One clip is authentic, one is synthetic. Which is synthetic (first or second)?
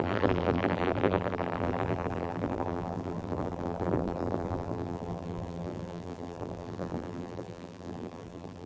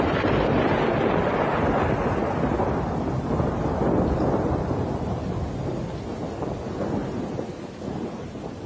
first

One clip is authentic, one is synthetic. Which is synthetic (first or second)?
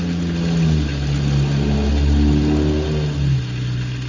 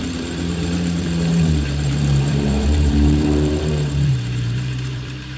second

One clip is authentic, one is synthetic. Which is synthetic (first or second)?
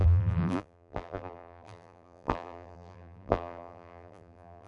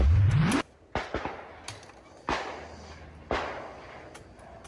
first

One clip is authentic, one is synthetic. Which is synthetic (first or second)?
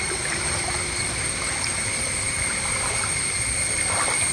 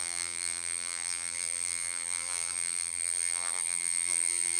second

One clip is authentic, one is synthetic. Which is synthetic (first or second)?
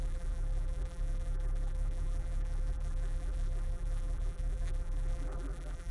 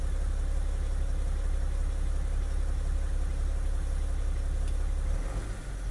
first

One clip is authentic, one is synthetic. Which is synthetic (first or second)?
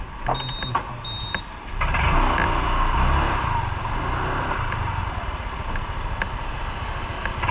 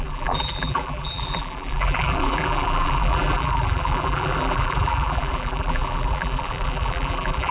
second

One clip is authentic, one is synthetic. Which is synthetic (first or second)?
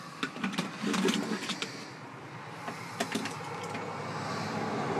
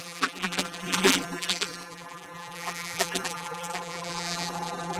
second